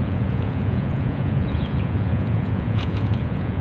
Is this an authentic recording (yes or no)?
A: no